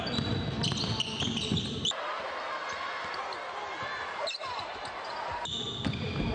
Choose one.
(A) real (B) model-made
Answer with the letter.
A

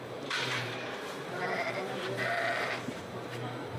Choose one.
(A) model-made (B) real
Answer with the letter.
A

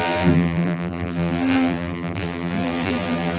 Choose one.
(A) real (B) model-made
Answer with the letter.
B